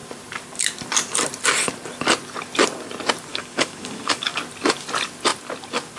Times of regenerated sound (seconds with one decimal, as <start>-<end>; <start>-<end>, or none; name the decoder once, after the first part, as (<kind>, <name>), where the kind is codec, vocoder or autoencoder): 3.3-4.4 (codec, DAC)